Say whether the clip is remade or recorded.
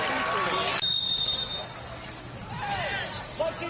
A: recorded